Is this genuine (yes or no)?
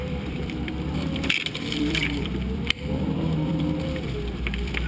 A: no